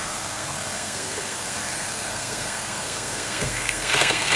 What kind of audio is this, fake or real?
fake